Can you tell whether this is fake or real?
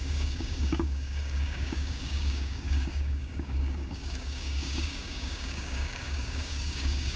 fake